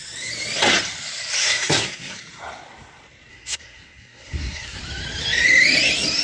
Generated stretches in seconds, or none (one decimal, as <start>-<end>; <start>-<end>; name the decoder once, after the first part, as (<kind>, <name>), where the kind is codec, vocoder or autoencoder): 1.4-2.2 (codec, SNAC); 3.3-4.8